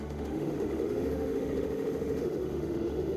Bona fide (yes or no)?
no